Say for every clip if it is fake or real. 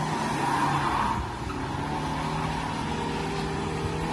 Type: real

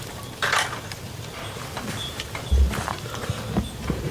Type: fake